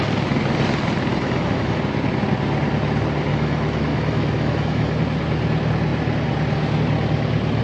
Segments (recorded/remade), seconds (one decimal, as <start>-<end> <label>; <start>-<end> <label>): 0.0-1.1 recorded; 1.1-1.8 remade; 1.8-3.3 recorded; 3.3-5.0 remade; 5.0-7.6 recorded